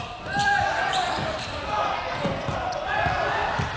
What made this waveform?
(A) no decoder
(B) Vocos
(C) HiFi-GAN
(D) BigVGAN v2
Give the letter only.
D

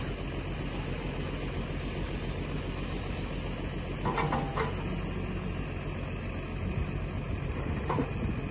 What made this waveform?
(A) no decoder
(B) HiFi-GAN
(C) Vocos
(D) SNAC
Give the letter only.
A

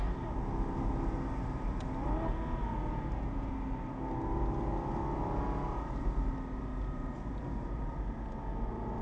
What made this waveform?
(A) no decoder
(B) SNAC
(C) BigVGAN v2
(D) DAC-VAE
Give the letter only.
A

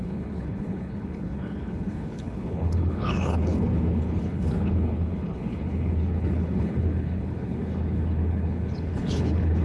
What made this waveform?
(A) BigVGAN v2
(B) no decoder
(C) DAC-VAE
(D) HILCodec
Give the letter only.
D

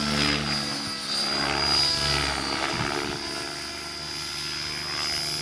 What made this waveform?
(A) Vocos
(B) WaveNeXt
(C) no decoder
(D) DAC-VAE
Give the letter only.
C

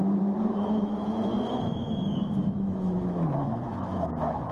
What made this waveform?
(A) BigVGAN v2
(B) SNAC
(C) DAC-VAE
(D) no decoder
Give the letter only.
C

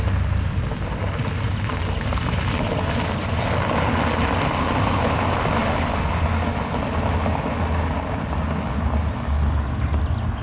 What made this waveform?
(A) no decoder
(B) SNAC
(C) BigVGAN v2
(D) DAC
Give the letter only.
A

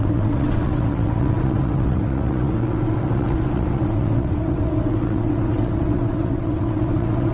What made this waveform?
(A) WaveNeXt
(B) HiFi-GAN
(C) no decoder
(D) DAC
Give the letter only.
A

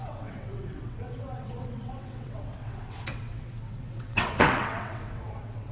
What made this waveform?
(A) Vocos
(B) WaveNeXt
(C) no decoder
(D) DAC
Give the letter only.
B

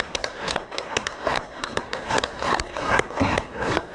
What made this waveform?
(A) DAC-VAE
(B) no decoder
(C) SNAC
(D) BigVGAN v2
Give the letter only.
C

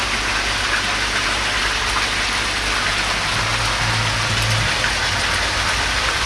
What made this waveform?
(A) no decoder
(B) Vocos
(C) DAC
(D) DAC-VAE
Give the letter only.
A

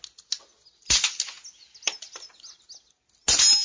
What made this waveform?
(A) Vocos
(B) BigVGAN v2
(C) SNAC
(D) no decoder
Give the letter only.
D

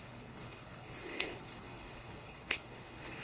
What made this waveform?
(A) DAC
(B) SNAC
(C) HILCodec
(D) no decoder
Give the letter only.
C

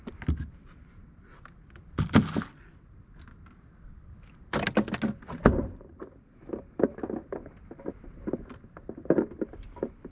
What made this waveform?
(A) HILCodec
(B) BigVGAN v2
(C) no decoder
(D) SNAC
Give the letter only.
C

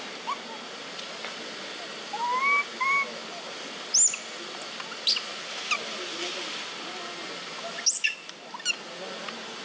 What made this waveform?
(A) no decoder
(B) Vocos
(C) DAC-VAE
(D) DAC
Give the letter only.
A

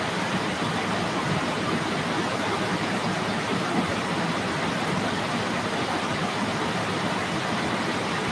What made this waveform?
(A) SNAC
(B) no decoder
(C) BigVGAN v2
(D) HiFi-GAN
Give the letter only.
C